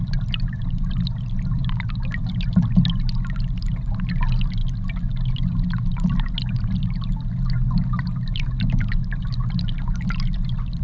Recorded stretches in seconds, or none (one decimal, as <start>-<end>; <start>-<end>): 0.0-10.8